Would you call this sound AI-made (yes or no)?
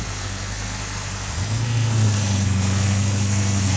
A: yes